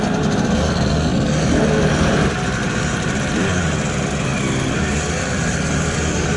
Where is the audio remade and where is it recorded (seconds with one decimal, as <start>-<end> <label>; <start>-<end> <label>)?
0.0-6.4 recorded